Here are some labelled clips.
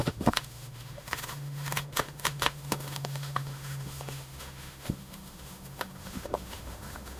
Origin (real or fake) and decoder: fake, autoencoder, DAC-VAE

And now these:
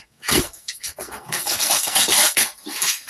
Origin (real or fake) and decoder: fake, codec, SNAC